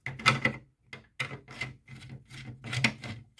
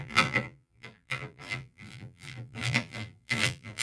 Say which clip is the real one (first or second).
first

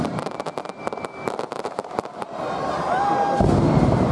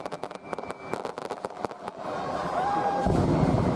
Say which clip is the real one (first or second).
first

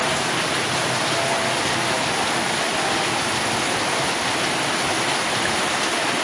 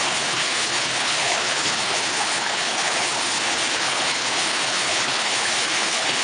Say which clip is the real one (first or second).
first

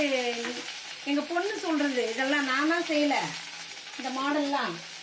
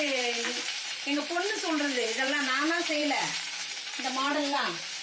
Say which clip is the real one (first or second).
first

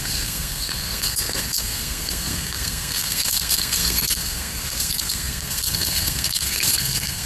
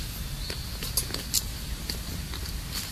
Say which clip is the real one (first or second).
second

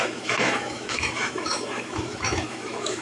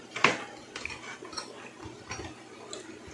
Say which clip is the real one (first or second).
second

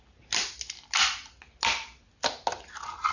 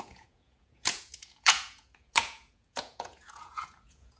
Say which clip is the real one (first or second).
first